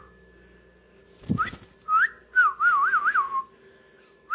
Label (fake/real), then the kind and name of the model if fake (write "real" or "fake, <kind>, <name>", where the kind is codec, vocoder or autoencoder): real